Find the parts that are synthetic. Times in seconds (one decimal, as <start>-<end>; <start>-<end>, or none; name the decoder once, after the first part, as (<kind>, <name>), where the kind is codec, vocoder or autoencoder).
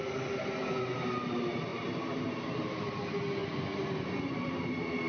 1.7-3.0 (vocoder, BigVGAN v2)